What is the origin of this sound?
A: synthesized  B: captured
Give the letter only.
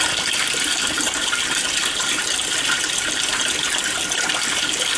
B